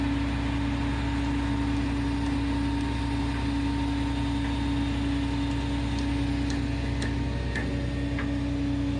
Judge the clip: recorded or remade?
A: recorded